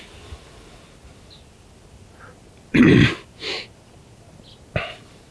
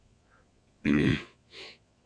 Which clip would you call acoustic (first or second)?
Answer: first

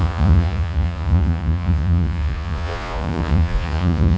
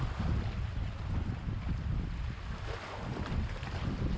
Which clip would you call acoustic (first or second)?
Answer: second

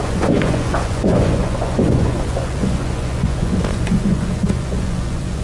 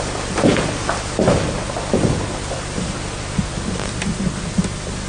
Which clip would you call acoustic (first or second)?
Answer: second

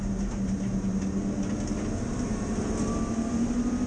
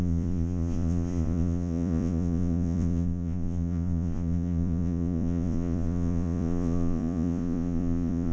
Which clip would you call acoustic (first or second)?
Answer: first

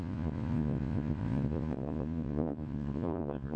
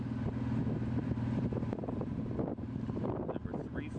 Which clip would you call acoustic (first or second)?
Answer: second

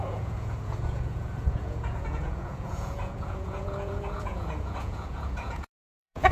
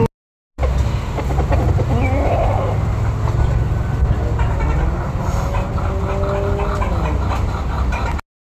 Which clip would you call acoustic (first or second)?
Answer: second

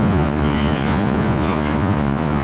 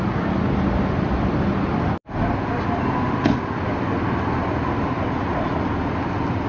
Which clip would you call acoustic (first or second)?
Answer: second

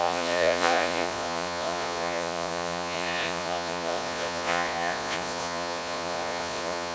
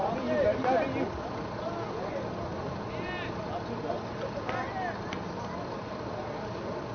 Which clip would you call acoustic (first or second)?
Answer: second